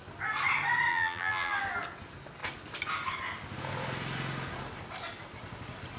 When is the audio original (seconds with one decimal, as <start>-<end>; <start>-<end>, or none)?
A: 0.0-0.9; 1.6-6.0